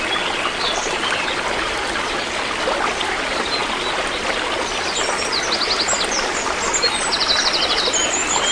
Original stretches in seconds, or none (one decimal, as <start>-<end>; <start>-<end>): 0.0-8.5